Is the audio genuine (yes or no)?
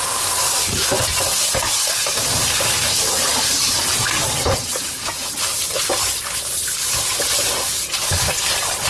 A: yes